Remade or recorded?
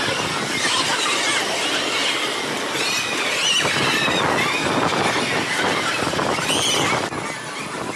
recorded